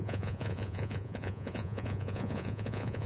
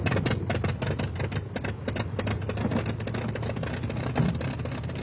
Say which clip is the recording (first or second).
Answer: second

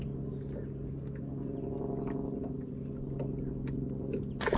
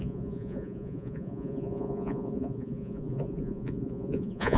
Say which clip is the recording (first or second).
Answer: first